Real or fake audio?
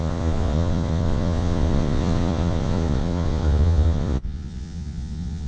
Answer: fake